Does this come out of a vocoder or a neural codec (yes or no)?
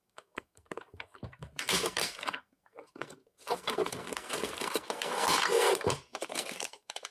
yes